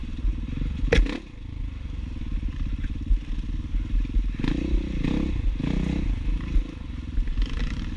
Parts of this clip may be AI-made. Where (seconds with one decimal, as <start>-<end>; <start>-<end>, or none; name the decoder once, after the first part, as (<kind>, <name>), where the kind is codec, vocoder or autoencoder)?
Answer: 0.0-0.5 (vocoder, BigVGAN v2)